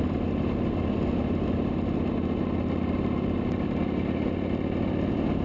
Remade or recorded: recorded